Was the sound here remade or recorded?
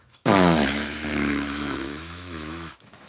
remade